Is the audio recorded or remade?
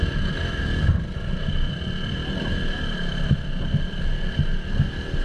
recorded